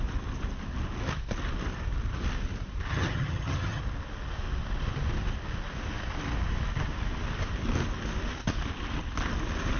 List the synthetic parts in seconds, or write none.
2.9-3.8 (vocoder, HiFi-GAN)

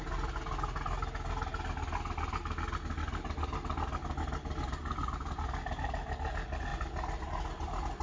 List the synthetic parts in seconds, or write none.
none

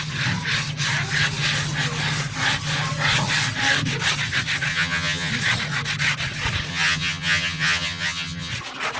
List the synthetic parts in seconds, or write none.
4.7-5.3 (vocoder, HiFi-GAN); 6.7-8.5

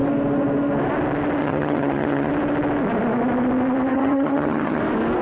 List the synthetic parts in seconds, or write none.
1.4-2.3 (vocoder, HiFi-GAN); 3.9-4.8

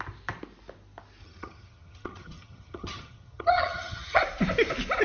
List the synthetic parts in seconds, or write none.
1.2-4.2 (vocoder, HiFi-GAN)

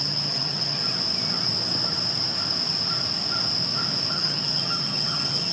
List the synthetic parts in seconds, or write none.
0.0-0.8 (vocoder, HiFi-GAN); 4.1-5.5